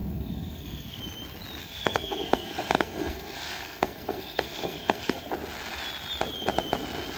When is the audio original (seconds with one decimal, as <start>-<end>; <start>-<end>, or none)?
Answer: 1.0-1.6; 5.3-7.2